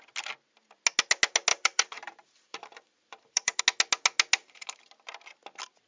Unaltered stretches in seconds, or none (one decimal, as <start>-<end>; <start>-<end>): 0.0-1.5; 3.6-4.4; 4.9-5.9

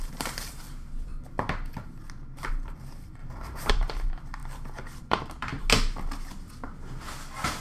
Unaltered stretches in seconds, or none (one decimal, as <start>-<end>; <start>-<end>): 1.1-2.5; 4.4-5.0; 5.5-7.6

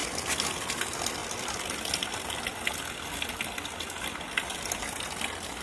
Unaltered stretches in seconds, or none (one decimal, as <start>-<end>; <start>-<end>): 0.0-5.6

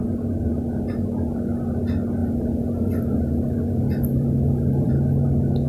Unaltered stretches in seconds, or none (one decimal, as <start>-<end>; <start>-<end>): 0.0-2.2; 4.9-5.7

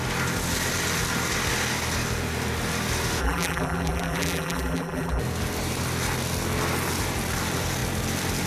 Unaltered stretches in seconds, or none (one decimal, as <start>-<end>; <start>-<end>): 0.0-3.2; 5.2-8.5

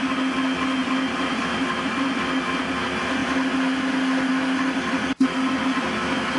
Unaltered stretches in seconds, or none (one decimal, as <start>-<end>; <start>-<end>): 0.0-0.8; 2.1-6.4